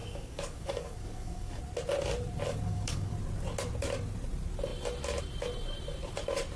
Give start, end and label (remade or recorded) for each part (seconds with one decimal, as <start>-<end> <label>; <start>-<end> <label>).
0.0-1.6 remade; 1.6-2.5 recorded; 2.5-3.1 remade; 3.1-6.6 recorded